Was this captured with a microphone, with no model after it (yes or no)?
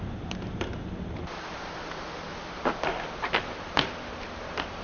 yes